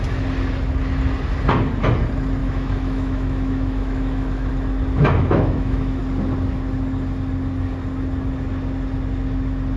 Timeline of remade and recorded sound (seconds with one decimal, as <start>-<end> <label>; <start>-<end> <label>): 0.0-2.4 recorded; 2.4-4.5 remade; 4.5-5.2 recorded; 5.2-6.0 remade; 6.0-9.8 recorded